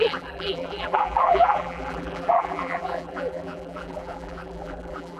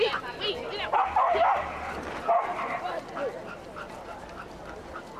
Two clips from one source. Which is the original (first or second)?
second